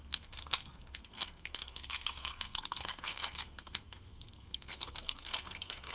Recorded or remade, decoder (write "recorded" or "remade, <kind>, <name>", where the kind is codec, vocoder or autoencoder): remade, codec, SNAC